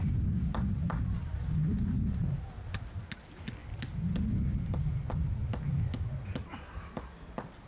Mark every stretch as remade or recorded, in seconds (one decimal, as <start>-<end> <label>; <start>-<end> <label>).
0.0-1.6 recorded; 1.6-2.4 remade; 2.4-7.7 recorded